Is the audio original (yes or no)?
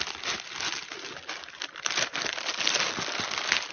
yes